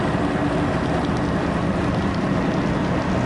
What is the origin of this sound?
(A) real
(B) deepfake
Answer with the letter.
A